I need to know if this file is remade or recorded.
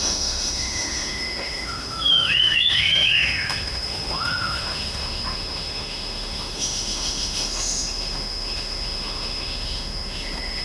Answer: remade